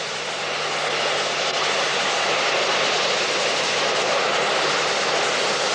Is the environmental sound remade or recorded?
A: recorded